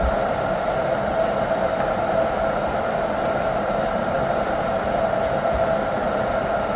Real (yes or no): yes